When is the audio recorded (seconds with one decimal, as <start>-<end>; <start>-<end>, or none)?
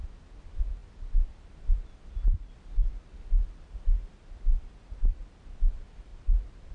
0.0-6.7